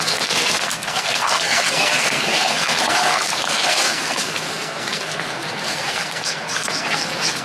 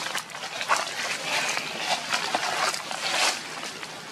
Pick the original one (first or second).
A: second